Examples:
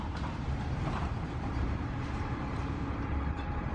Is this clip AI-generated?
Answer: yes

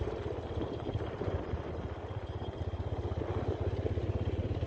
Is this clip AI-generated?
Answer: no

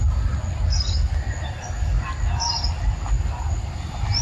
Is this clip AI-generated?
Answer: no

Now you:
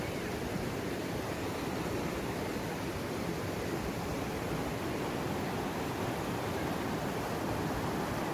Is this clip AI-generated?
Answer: no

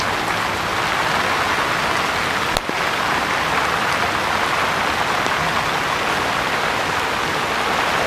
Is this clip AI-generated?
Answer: no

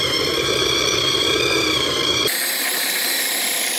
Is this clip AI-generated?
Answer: yes